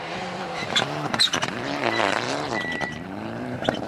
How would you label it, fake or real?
fake